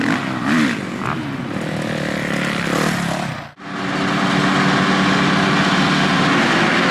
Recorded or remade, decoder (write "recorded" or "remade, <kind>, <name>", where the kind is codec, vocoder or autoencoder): recorded